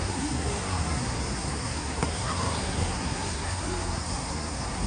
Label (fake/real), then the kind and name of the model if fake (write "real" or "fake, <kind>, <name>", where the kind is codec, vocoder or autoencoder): fake, codec, SNAC